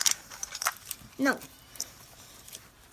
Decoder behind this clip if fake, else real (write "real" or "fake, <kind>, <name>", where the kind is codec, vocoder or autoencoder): fake, vocoder, BigVGAN v2